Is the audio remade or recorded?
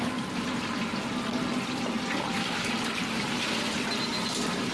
recorded